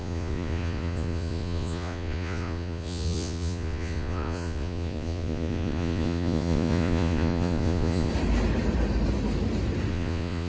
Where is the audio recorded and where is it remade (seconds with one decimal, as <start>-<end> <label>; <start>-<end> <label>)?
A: 0.0-8.1 remade; 8.1-9.9 recorded; 9.9-10.5 remade